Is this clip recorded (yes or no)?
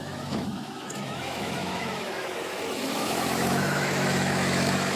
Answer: no